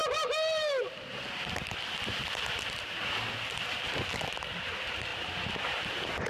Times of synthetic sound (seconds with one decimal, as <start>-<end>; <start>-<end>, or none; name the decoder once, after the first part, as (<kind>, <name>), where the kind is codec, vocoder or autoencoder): 5.1-6.3 (vocoder, BigVGAN v2)